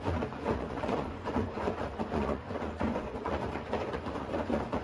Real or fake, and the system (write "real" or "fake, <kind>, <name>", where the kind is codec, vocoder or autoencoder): fake, vocoder, Vocos